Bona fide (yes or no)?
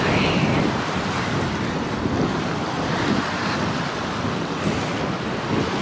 yes